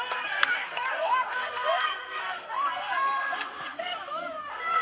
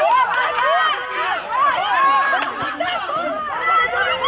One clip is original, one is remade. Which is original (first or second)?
second